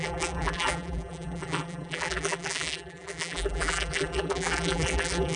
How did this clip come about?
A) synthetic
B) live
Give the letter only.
A